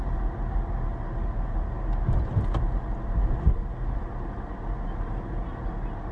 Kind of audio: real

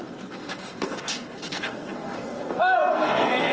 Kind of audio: fake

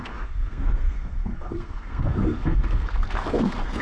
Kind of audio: fake